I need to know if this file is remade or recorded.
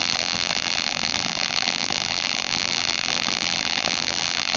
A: remade